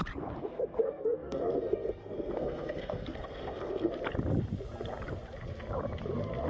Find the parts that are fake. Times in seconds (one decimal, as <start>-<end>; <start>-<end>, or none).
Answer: 0.4-3.9